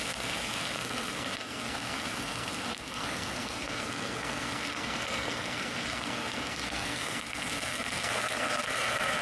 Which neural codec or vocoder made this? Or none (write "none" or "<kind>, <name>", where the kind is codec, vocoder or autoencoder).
codec, SNAC